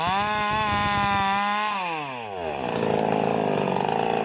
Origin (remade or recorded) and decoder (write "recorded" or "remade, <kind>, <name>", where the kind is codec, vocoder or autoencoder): recorded